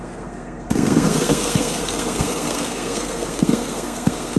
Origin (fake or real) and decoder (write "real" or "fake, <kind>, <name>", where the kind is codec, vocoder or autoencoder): fake, codec, SNAC